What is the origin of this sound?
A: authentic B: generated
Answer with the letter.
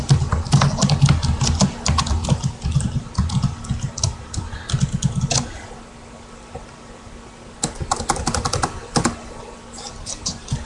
A